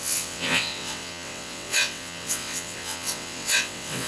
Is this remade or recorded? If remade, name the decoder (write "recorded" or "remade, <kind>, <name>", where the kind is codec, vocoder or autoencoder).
remade, vocoder, WaveNeXt